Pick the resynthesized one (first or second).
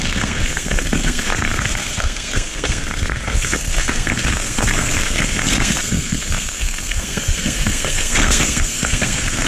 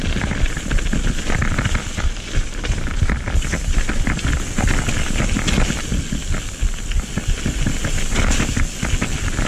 first